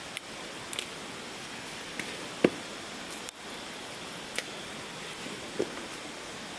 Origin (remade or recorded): recorded